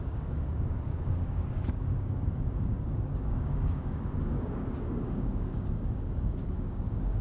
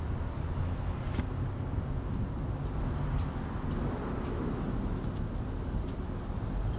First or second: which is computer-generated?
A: first